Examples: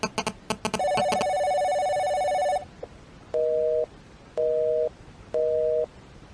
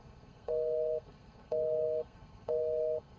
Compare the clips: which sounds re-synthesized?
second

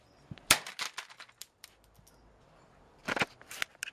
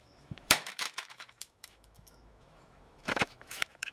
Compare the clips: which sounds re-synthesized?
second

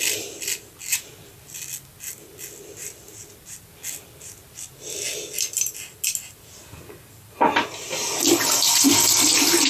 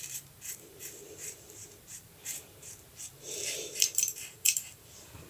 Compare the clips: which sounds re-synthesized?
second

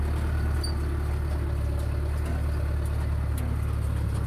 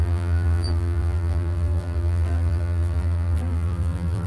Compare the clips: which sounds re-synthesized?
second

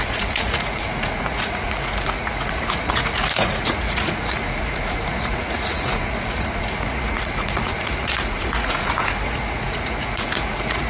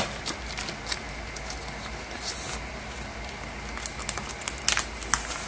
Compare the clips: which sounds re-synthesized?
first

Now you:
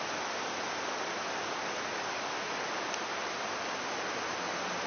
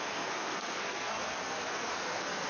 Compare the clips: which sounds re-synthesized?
second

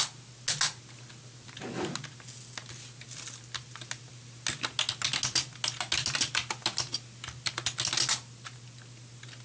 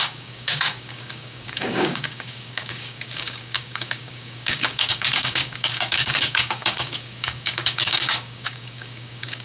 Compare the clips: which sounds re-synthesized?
second